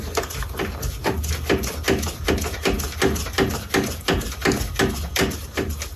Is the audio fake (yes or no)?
no